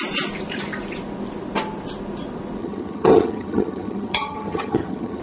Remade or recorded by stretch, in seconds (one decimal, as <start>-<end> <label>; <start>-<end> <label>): 0.0-2.6 recorded; 2.6-5.2 remade